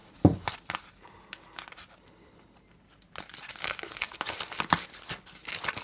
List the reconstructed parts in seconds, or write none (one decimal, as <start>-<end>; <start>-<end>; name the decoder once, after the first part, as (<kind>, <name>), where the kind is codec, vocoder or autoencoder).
none